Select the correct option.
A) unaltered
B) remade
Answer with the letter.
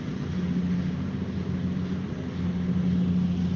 A